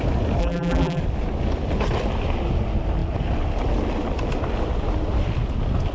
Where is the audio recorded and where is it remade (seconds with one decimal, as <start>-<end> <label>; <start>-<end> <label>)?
0.0-0.4 recorded; 0.4-1.0 remade; 1.0-5.9 recorded

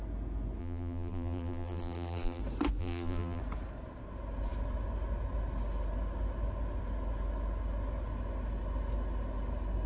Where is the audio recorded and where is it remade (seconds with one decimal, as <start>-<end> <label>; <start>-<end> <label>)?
0.0-0.6 recorded; 0.6-2.4 remade; 2.4-2.8 recorded; 2.8-3.4 remade; 3.4-9.9 recorded

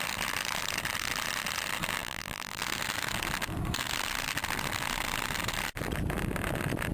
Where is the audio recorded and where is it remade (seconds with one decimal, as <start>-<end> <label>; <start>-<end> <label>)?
0.0-2.0 recorded; 2.0-2.6 remade; 2.6-6.9 recorded

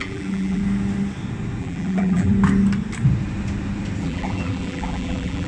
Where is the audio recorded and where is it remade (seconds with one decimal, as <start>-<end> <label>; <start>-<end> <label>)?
0.0-0.6 remade; 0.6-1.6 recorded; 1.6-2.3 remade; 2.3-4.0 recorded; 4.0-5.5 remade

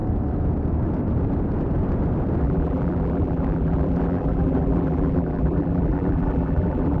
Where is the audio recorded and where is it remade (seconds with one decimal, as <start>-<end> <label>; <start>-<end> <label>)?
0.0-2.4 recorded; 2.4-7.0 remade

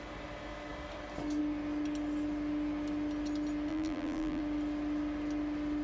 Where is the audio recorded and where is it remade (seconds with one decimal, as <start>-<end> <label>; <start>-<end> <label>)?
0.0-3.7 recorded; 3.7-4.4 remade; 4.4-5.8 recorded

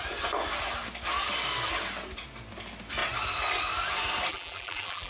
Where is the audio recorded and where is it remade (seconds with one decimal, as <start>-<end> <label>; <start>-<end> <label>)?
0.0-4.3 recorded; 4.3-5.1 remade

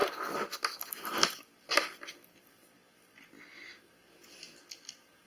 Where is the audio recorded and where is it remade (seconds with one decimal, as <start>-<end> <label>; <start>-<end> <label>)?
0.0-5.3 remade